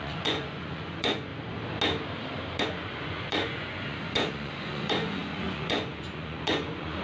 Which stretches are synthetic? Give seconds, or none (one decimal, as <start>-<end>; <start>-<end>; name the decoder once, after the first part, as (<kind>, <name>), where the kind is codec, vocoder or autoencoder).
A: 0.0-1.3 (vocoder, Vocos); 2.6-7.0